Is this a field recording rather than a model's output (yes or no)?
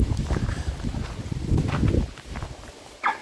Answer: no